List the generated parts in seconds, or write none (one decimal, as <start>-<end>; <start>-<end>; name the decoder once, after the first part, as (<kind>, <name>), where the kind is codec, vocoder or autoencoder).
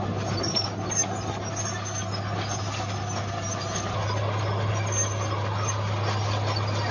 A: none